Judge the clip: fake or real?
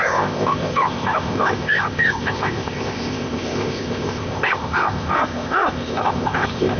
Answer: fake